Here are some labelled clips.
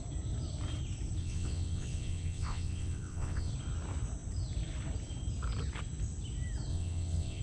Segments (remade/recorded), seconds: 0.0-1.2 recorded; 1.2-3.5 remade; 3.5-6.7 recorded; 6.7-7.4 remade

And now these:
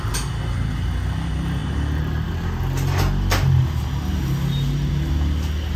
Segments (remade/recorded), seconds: 0.0-5.8 recorded

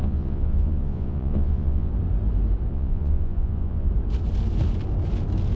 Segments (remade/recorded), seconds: 0.0-1.9 remade; 1.9-2.7 recorded; 2.7-3.9 remade; 3.9-5.6 recorded

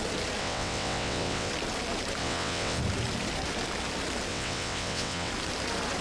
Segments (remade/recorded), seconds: 0.0-0.4 recorded; 0.4-1.5 remade; 1.5-2.2 recorded; 2.2-2.8 remade; 2.8-4.3 recorded; 4.3-5.3 remade; 5.3-6.0 recorded